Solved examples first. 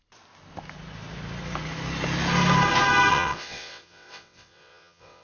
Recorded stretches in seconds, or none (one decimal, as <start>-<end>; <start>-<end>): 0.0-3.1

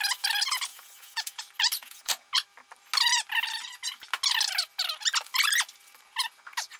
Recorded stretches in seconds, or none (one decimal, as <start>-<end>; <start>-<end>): 0.0-0.7; 1.4-1.8; 2.3-6.8

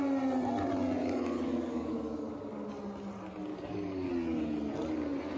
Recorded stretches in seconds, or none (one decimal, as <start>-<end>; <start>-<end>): 0.0-1.0; 2.7-3.5; 4.1-5.4

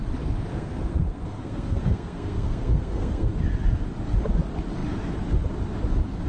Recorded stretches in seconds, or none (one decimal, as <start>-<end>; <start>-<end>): 0.0-0.5; 3.3-6.3

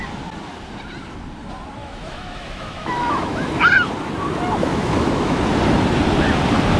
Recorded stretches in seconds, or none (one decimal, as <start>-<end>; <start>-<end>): 0.0-1.8; 3.6-4.7; 5.4-6.8

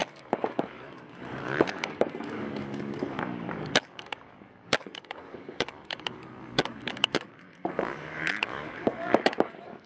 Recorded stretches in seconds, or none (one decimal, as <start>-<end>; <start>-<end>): none

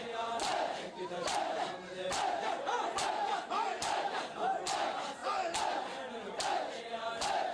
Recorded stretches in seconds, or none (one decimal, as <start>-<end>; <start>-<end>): 0.0-7.5